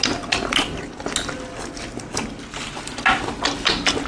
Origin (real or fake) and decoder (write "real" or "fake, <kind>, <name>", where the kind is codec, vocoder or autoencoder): real